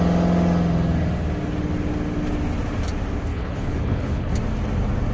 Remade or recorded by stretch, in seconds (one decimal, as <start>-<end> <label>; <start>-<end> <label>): 0.0-3.3 recorded; 3.3-4.3 remade; 4.3-5.1 recorded